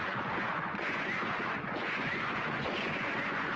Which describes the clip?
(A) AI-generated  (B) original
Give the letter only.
A